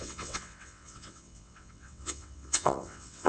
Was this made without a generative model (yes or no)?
no